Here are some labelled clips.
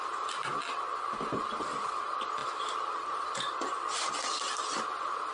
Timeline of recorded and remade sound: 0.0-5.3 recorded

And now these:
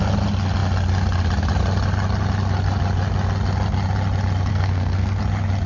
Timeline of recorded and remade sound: 0.0-4.5 recorded; 4.5-5.2 remade; 5.2-5.7 recorded

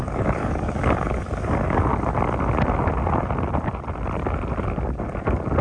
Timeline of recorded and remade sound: 0.0-1.9 remade; 1.9-5.6 recorded